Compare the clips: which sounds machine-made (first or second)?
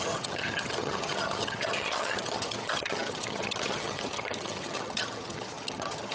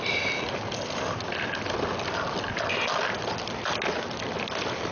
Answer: first